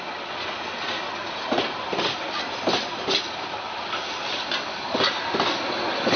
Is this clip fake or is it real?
real